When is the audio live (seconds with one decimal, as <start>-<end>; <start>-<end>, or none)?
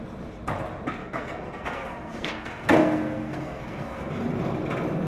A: 0.0-1.0; 4.1-5.1